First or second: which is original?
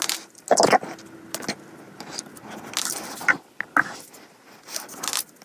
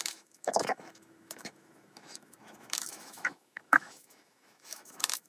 first